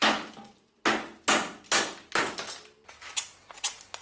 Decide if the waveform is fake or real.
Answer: real